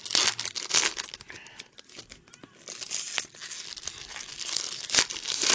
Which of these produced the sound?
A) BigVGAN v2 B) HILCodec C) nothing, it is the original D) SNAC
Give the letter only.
C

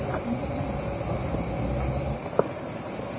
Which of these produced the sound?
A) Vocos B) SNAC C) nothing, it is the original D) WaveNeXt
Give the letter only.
C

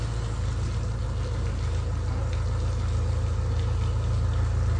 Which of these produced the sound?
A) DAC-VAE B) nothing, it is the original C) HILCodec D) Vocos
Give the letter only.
B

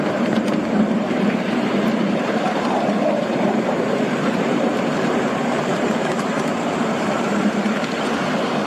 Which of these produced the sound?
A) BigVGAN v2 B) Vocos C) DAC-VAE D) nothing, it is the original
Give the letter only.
A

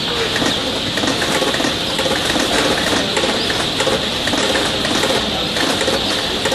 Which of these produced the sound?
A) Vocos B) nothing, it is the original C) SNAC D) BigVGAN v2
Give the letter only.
B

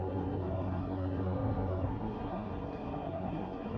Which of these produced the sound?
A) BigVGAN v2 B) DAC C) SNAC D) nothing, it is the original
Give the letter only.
C